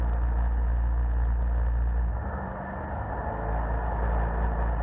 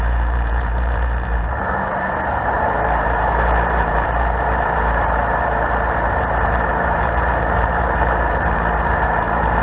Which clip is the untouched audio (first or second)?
first